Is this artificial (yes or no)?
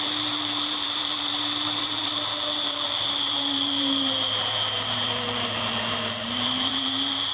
yes